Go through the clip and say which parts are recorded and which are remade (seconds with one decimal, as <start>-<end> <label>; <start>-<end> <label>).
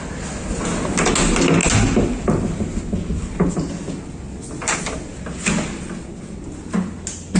0.0-7.4 recorded